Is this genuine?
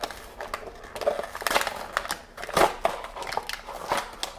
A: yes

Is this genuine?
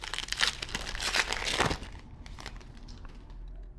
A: yes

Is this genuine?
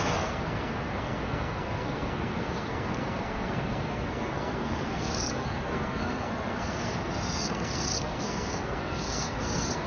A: no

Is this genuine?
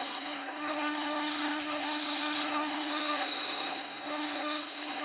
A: no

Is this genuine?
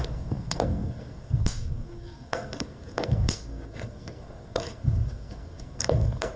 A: no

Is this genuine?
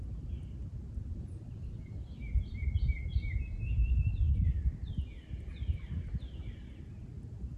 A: yes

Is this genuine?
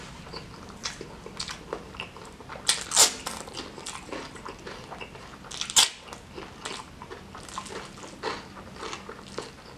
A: yes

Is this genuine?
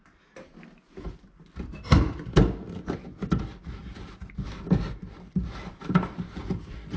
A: yes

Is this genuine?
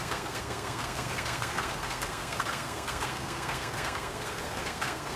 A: no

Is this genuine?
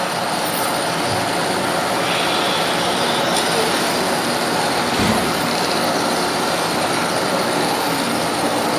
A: yes